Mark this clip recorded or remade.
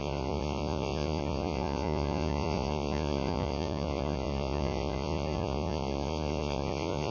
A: remade